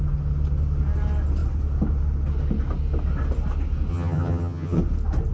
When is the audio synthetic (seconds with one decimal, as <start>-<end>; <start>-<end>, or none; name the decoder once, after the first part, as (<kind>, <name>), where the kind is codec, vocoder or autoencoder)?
3.9-4.8 (vocoder, HiFi-GAN)